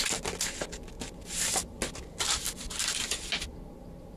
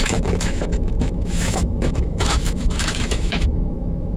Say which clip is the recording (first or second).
first